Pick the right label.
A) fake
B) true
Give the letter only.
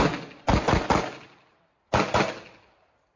B